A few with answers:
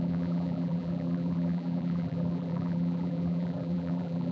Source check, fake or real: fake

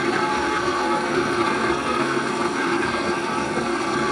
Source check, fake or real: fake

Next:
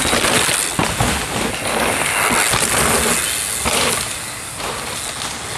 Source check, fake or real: real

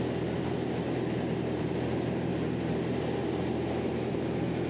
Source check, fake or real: real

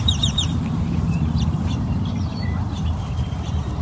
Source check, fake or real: fake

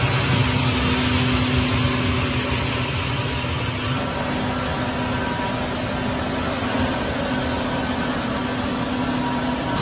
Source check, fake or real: real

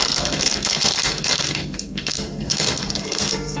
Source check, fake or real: fake